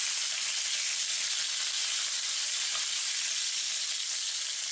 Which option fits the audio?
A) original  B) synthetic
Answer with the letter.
A